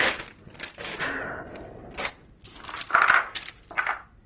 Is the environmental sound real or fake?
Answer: real